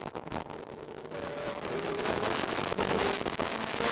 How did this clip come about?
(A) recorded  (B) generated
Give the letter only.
B